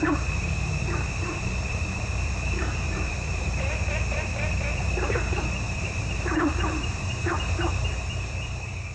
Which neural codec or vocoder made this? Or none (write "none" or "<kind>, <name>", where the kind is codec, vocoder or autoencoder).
vocoder, BigVGAN v2